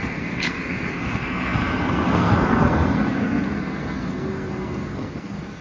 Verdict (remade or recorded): remade